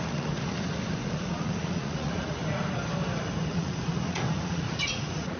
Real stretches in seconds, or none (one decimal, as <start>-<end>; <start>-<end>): 2.4-3.5